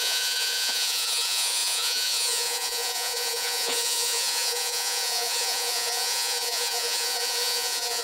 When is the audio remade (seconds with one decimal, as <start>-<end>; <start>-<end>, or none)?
0.0-8.0